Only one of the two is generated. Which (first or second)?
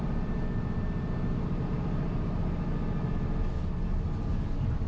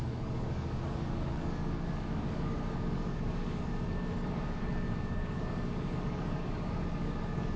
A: second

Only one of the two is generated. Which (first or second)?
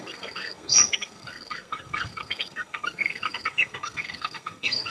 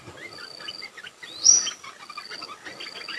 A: first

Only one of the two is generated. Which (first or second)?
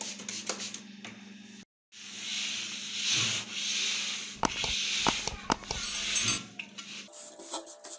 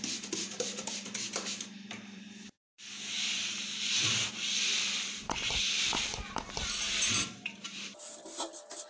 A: second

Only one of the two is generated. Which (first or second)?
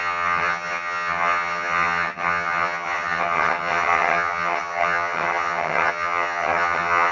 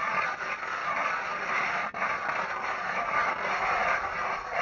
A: first